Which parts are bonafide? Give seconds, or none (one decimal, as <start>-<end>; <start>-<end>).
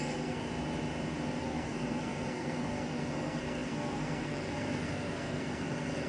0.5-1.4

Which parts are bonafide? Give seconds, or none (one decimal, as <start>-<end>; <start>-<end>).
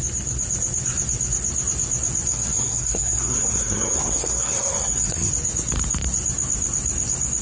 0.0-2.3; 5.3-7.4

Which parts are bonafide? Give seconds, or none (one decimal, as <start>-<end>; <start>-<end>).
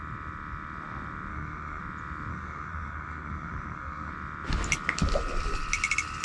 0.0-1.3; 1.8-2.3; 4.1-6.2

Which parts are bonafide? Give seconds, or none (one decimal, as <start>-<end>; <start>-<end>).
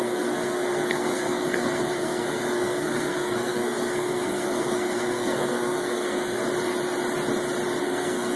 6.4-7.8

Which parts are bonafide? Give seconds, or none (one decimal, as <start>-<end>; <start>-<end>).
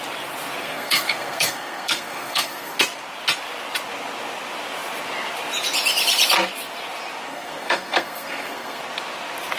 0.0-0.6; 2.8-7.3; 8.8-9.6